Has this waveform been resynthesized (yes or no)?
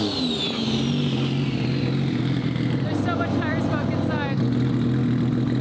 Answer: no